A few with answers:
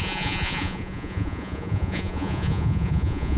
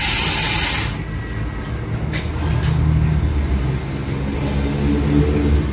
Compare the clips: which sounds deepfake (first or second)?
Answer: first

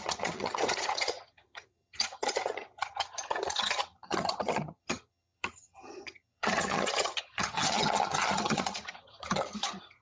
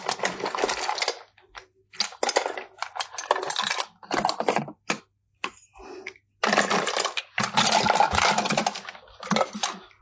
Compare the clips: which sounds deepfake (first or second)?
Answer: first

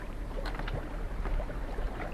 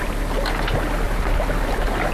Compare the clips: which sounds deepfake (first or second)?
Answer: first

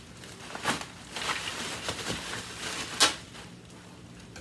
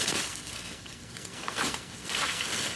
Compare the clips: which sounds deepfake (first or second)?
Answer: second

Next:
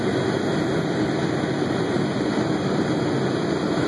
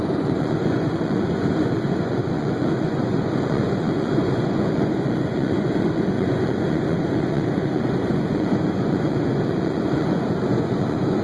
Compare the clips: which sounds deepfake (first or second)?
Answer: second